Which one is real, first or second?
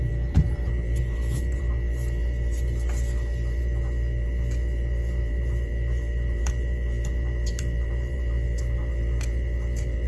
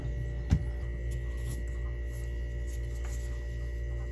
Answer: second